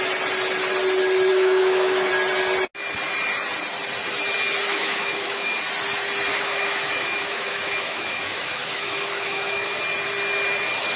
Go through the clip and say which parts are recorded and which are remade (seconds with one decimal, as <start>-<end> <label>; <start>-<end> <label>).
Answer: 0.0-1.3 recorded; 1.3-2.1 remade; 2.1-4.7 recorded; 4.7-5.6 remade; 5.6-6.3 recorded; 6.3-9.8 remade; 9.8-11.0 recorded